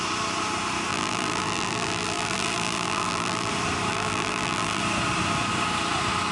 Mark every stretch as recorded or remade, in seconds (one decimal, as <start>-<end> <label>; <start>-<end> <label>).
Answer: 0.0-0.9 recorded; 0.9-3.5 remade; 3.5-3.9 recorded; 3.9-4.8 remade; 4.8-6.3 recorded